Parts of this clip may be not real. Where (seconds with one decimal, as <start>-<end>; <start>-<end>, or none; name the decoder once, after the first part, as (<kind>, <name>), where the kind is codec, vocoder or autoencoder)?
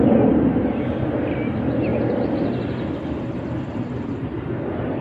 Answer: 1.9-5.0 (vocoder, BigVGAN v2)